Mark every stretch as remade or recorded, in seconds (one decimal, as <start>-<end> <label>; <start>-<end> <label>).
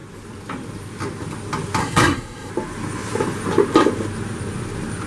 0.0-1.8 recorded; 1.8-2.5 remade; 2.5-5.1 recorded